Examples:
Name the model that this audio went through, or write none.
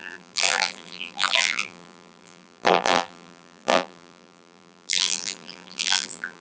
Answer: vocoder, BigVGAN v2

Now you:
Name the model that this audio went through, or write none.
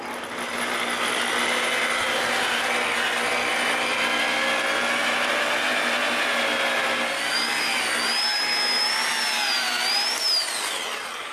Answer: none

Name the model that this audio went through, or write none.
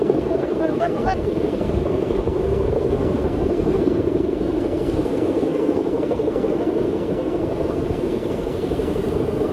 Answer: codec, SNAC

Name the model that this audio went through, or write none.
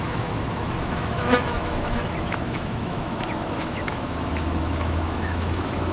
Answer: autoencoder, DAC-VAE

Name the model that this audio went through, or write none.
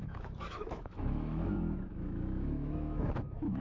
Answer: autoencoder, DAC-VAE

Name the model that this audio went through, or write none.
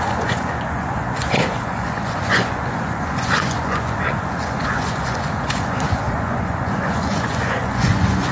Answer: vocoder, Vocos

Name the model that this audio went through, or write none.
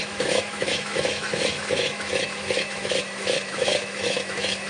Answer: autoencoder, DAC-VAE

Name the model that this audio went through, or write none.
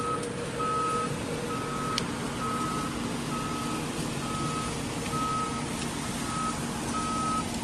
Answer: none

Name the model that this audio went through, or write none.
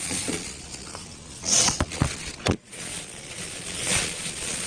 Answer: vocoder, Vocos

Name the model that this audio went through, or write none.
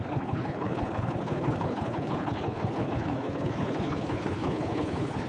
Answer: codec, HILCodec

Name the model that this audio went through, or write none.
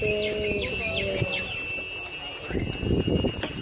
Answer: none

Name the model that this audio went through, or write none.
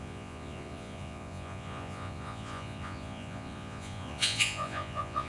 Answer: vocoder, Vocos